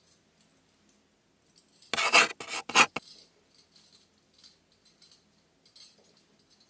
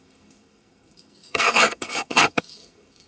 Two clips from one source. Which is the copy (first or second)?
second